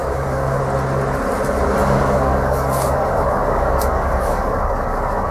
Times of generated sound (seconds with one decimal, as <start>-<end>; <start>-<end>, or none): 0.0-0.6; 1.8-5.3